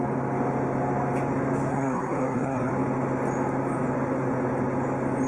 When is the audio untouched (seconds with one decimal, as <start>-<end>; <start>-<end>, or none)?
0.0-1.7; 2.7-5.3